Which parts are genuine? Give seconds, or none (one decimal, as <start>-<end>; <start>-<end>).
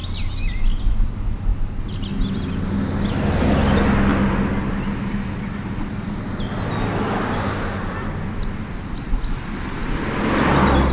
0.0-10.9